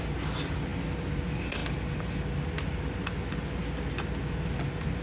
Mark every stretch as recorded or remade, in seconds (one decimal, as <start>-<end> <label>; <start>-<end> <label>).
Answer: 0.0-5.0 recorded